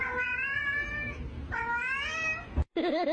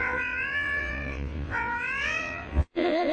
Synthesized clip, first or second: second